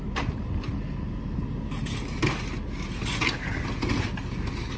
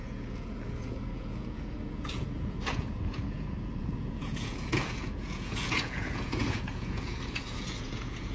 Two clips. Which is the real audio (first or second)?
first